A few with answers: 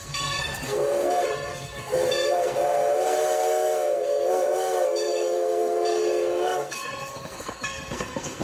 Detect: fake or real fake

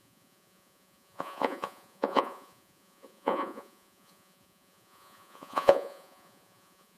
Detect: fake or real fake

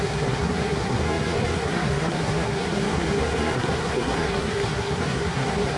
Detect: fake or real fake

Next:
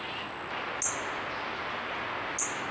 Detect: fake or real real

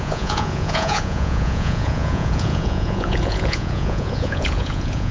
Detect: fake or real fake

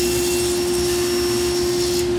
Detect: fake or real real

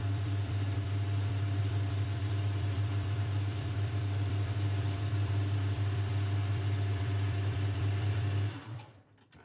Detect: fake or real fake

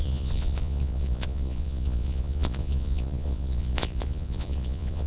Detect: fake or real fake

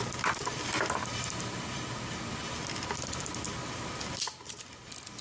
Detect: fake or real real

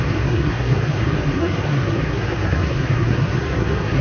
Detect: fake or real fake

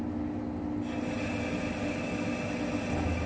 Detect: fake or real real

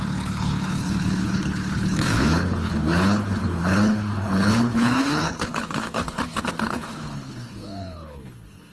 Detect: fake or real fake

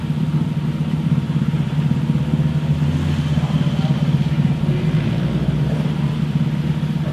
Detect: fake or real real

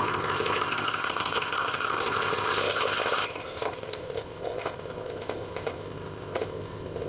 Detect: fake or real fake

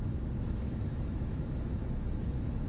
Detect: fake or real fake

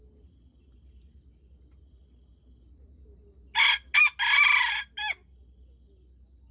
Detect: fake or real real